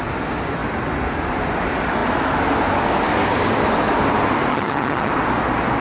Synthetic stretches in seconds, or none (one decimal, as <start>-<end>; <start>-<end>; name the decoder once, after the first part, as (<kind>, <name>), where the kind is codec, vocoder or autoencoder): 4.5-5.1 (vocoder, HiFi-GAN)